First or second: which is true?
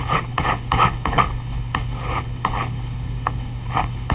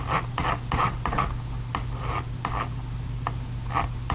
second